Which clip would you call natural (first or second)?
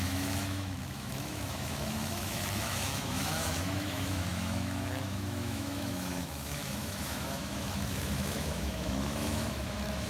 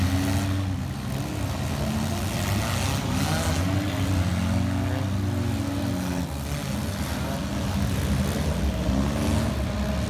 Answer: second